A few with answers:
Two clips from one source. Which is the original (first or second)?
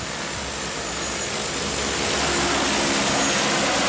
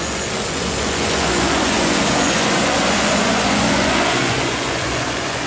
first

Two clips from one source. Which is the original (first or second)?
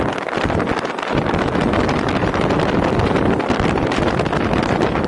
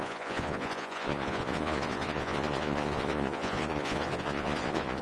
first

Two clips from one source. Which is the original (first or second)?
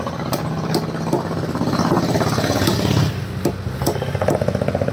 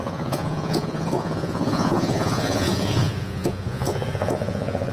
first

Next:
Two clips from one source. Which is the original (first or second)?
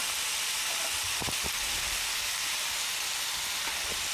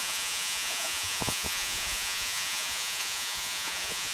first